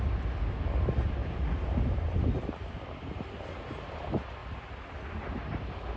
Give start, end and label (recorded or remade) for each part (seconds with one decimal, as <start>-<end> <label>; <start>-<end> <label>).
0.0-6.0 recorded

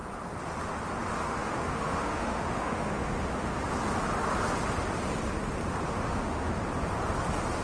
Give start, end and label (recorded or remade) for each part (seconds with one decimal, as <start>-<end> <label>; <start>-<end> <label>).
0.0-1.2 recorded; 1.2-3.5 remade; 3.5-5.9 recorded; 5.9-6.5 remade; 6.5-7.6 recorded